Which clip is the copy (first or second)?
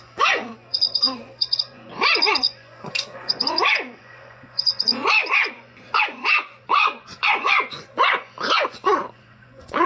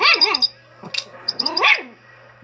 first